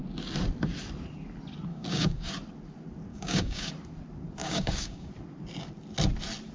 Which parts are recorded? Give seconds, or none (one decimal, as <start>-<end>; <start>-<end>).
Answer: 0.0-1.7; 2.3-3.1; 3.7-4.4; 5.1-6.5